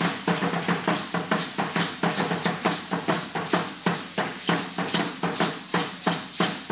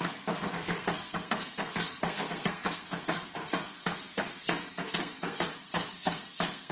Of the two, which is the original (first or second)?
first